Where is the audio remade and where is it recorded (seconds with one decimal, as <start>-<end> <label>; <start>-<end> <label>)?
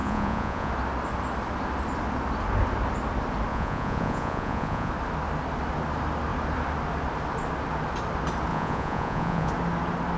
0.0-0.7 remade; 0.7-3.5 recorded; 3.5-4.9 remade; 4.9-8.5 recorded; 8.5-9.5 remade; 9.5-10.2 recorded